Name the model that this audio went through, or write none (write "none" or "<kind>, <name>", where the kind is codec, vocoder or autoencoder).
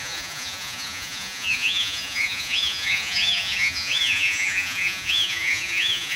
vocoder, Vocos